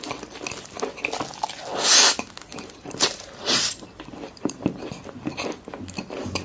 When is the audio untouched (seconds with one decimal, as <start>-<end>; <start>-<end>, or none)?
0.0-2.5; 4.8-6.4